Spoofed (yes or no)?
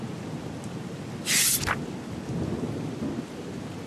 no